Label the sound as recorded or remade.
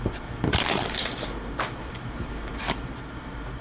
remade